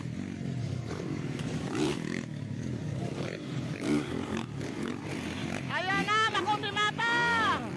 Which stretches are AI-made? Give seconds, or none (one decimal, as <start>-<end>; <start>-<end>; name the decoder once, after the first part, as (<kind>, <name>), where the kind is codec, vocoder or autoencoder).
0.6-4.9 (codec, DAC)